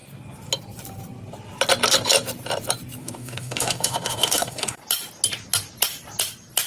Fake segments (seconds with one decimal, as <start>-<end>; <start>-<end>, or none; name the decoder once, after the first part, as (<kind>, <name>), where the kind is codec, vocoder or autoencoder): 3.0-4.8 (autoencoder, DAC-VAE)